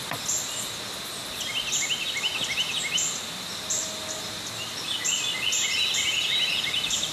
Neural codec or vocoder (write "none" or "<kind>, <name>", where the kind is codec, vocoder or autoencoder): none